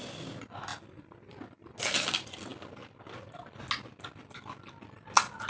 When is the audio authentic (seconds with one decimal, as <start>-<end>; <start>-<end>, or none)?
0.0-5.5